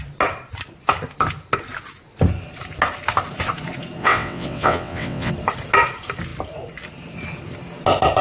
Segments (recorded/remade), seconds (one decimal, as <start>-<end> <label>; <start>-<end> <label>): 0.0-4.0 recorded; 4.0-5.3 remade; 5.3-8.2 recorded

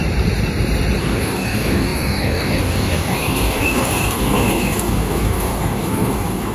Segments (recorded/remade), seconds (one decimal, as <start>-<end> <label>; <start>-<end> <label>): 0.0-1.0 recorded; 1.0-6.5 remade

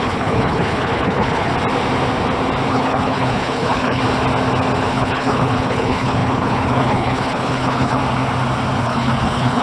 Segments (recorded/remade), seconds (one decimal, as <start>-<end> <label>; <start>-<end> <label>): 0.0-1.5 remade; 1.5-2.7 recorded; 2.7-4.0 remade; 4.0-4.9 recorded; 4.9-8.0 remade; 8.0-8.8 recorded; 8.8-9.6 remade

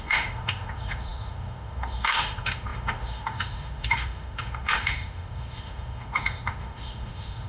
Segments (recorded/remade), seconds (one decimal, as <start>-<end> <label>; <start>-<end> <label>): 0.0-7.5 remade